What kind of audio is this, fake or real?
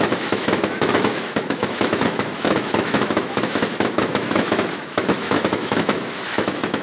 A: fake